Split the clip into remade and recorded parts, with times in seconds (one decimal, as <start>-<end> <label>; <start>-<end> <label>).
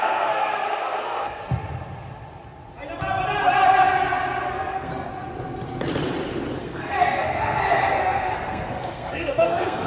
0.0-1.4 remade; 1.4-4.5 recorded; 4.5-5.1 remade; 5.1-6.6 recorded; 6.6-9.9 remade